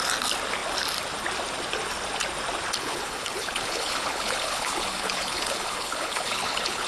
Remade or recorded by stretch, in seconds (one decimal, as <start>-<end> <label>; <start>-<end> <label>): 0.0-2.8 recorded; 2.8-6.9 remade